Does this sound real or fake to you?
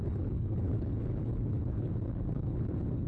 fake